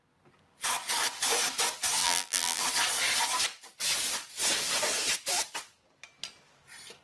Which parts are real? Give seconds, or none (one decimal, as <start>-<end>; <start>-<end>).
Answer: 0.0-2.0; 2.6-7.0